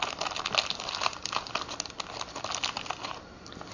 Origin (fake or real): real